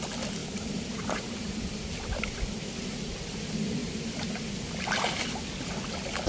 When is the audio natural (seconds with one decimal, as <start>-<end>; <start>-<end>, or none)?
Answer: 0.0-0.4; 1.2-3.8; 4.4-6.3